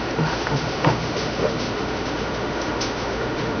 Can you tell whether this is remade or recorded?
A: remade